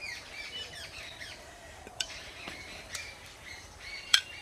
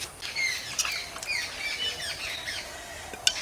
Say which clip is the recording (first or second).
second